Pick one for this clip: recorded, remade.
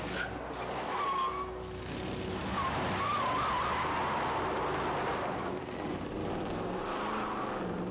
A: recorded